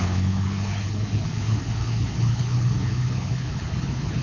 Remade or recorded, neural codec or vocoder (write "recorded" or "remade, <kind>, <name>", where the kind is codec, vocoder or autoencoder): remade, codec, HILCodec